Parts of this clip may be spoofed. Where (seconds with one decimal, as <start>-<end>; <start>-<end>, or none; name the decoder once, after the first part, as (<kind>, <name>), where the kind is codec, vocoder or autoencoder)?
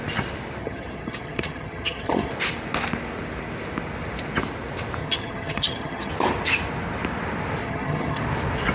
0.6-2.3 (vocoder, HiFi-GAN); 5.0-6.1; 7.6-8.2